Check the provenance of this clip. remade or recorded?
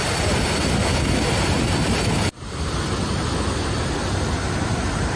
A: recorded